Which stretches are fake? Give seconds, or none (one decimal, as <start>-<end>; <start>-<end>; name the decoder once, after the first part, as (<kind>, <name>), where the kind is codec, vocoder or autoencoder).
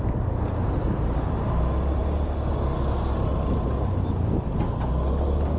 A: none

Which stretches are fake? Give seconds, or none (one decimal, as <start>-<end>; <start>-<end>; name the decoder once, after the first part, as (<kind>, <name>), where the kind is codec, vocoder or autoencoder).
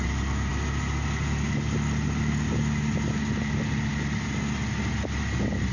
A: none